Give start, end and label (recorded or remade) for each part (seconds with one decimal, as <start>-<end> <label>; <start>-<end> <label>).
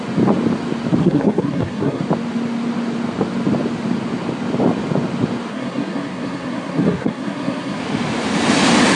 0.0-1.0 recorded; 1.0-2.0 remade; 2.0-5.5 recorded; 5.5-7.8 remade; 7.8-9.0 recorded